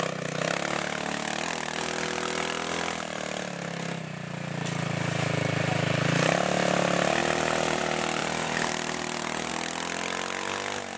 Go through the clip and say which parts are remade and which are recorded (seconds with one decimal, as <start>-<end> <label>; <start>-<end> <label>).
0.0-7.2 recorded; 7.2-7.8 remade; 7.8-8.2 recorded; 8.2-9.5 remade; 9.5-11.0 recorded